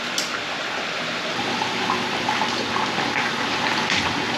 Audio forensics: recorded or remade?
recorded